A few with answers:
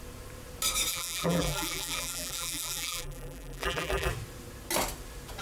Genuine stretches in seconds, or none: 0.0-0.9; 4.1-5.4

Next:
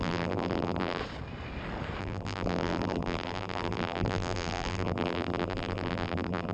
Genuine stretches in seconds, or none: 1.0-2.0

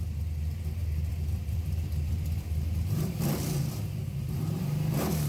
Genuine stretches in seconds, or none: 0.0-0.8; 4.0-5.3

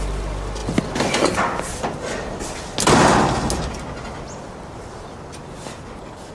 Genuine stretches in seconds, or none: 0.0-6.3

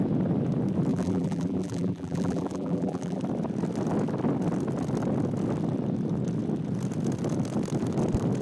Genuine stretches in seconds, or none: 0.0-0.9; 3.2-8.4

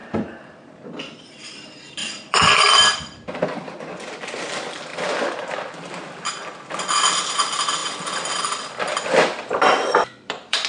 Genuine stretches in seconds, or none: 0.6-2.0; 3.6-4.9; 5.9-7.8

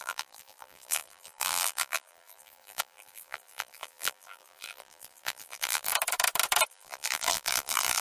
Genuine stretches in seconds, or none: 5.9-6.7

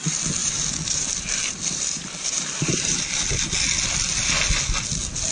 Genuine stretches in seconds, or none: 0.0-0.4; 3.2-5.3